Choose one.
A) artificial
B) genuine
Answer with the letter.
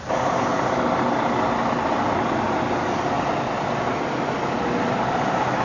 B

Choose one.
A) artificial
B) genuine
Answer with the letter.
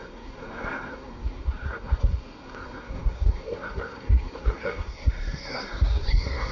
A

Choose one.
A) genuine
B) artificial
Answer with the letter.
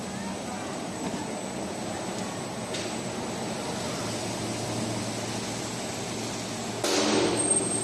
A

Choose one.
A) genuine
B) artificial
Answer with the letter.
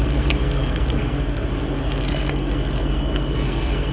B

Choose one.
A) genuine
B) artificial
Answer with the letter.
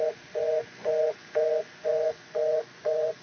B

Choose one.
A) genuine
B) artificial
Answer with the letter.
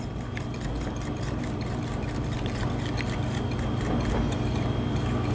A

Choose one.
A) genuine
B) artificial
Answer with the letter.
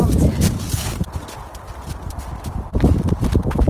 A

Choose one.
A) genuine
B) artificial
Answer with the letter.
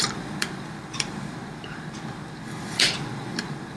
B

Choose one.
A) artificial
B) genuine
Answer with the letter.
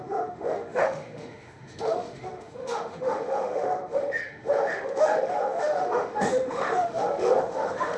A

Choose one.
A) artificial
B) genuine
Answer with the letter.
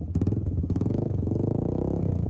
A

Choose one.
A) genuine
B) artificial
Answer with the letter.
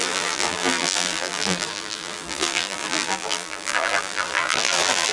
B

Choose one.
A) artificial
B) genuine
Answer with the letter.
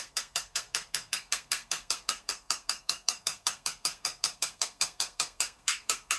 A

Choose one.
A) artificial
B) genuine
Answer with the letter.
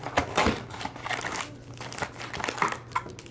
B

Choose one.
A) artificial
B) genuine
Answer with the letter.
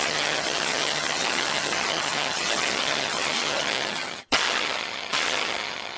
A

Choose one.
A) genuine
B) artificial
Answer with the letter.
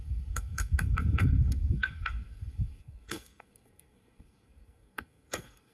B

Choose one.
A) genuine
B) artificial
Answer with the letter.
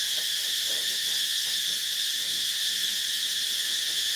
B